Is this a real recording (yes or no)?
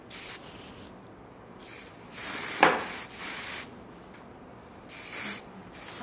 yes